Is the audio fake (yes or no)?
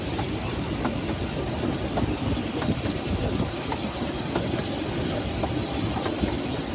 no